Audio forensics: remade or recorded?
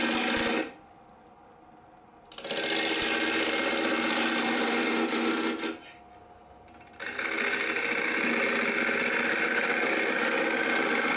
recorded